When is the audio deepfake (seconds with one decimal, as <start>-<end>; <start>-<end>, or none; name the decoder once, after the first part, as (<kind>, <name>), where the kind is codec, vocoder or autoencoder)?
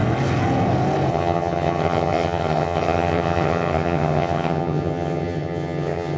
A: 1.1-6.2 (vocoder, HiFi-GAN)